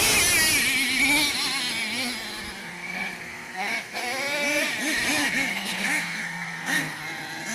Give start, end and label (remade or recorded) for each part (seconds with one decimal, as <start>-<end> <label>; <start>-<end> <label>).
0.0-2.6 recorded; 2.6-4.0 remade; 4.0-5.5 recorded; 5.5-7.0 remade; 7.0-7.5 recorded